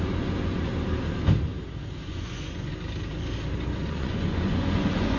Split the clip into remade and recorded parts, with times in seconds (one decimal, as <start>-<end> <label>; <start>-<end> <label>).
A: 0.0-0.7 remade; 0.7-2.1 recorded; 2.1-2.7 remade; 2.7-3.9 recorded; 3.9-5.2 remade